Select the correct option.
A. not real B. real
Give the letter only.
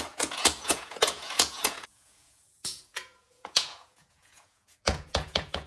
A